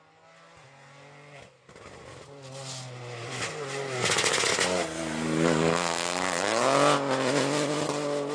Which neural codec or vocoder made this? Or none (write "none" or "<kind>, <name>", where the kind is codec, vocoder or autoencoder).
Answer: none